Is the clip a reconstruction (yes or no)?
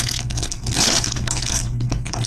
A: yes